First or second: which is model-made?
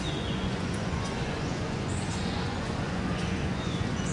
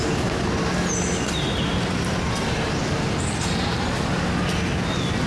first